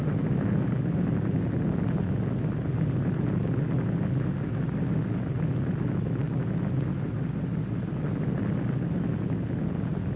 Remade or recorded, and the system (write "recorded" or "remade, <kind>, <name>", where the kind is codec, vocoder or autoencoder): recorded